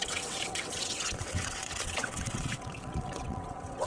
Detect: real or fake fake